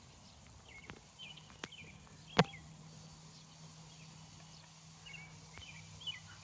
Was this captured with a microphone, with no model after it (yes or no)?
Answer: yes